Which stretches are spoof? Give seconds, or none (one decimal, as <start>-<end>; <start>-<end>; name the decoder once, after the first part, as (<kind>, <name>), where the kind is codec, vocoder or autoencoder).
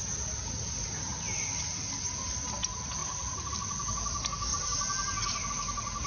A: 0.0-1.1 (vocoder, BigVGAN v2); 1.6-3.0; 3.5-6.1